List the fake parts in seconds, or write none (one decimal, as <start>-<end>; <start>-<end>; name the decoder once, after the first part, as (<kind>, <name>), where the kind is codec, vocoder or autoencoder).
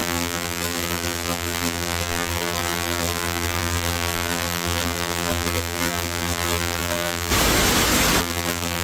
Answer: 0.0-7.3 (vocoder, BigVGAN v2); 8.2-8.8